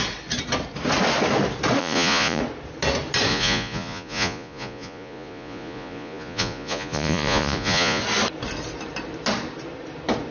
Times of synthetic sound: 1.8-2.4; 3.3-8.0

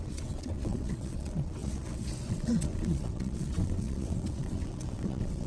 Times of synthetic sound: 0.0-5.5

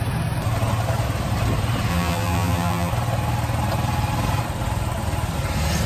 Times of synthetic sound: 1.9-2.9

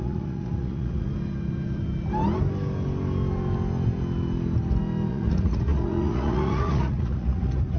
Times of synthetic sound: 0.0-1.1; 5.1-7.8

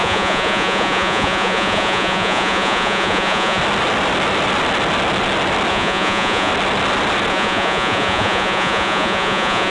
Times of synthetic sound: 0.0-3.6; 5.7-6.5; 7.3-9.7

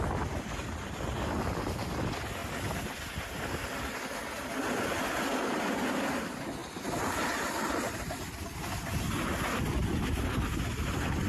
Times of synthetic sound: none

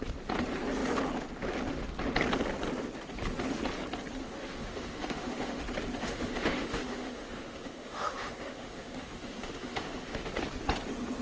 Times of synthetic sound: 4.2-5.6; 6.0-10.3